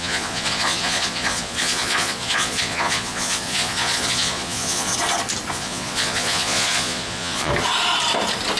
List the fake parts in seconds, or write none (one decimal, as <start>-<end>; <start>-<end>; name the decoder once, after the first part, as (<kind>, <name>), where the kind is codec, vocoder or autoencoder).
0.0-4.9 (vocoder, Vocos); 5.5-7.5